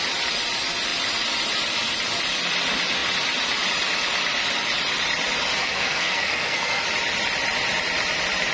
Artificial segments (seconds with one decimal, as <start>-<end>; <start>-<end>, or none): 5.6-6.8